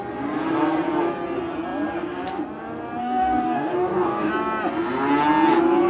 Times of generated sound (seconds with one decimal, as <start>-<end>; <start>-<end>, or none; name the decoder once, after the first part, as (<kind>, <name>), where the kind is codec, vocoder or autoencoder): 3.0-4.3 (codec, DAC)